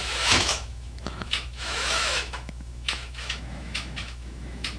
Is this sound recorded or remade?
remade